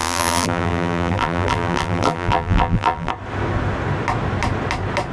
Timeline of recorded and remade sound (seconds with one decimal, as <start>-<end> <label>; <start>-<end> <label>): 0.0-3.1 remade; 3.1-5.1 recorded